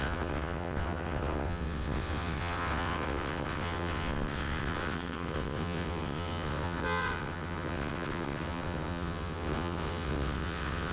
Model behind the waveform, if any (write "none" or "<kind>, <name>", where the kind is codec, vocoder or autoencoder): vocoder, WaveNeXt